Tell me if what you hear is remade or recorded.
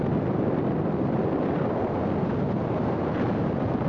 recorded